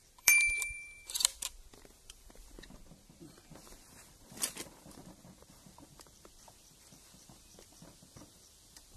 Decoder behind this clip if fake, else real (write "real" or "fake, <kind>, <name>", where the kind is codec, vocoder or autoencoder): fake, vocoder, BigVGAN v2